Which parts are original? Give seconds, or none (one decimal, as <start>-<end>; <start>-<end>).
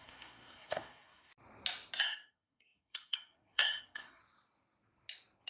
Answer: 1.3-2.0; 4.2-5.5